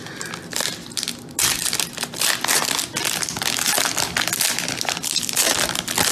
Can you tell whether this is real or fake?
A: real